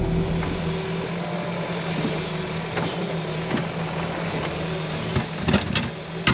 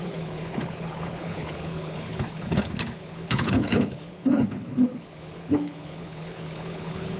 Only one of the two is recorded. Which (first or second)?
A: first